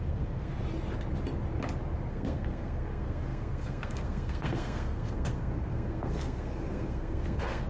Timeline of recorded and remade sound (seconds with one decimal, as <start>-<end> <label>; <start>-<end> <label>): 0.0-0.5 remade; 0.5-2.1 recorded; 2.1-7.7 remade